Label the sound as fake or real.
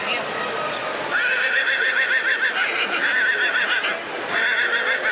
real